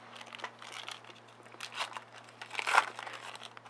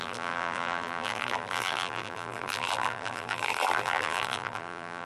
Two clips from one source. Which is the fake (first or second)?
second